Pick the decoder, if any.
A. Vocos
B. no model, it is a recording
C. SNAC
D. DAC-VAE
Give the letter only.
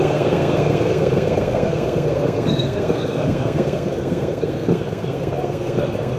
C